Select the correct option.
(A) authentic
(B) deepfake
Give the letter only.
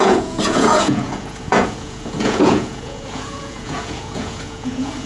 B